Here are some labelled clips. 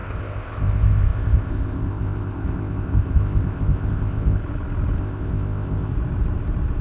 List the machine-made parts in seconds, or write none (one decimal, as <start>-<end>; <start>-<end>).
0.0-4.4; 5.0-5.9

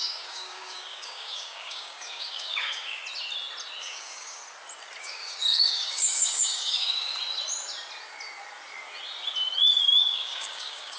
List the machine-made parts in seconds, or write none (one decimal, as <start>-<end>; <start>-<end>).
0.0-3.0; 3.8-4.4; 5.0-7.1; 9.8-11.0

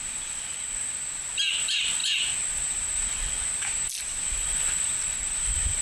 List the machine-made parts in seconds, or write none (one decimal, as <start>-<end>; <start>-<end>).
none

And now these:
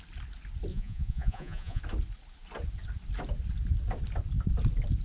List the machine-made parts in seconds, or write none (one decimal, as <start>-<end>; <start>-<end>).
0.7-1.8

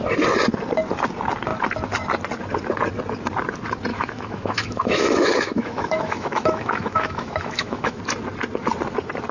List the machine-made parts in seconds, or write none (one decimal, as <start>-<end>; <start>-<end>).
3.9-8.0